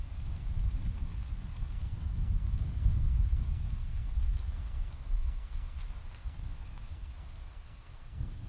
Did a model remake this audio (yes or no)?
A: yes